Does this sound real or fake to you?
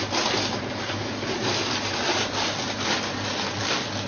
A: real